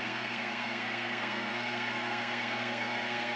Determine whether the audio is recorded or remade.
remade